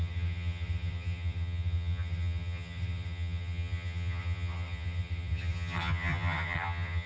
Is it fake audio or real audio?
fake